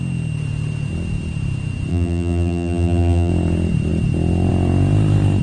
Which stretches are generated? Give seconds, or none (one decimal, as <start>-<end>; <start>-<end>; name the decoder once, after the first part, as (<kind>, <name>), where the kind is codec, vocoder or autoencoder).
1.9-3.3 (vocoder, BigVGAN v2)